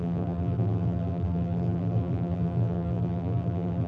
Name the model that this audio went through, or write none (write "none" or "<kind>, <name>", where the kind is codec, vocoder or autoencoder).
vocoder, BigVGAN v2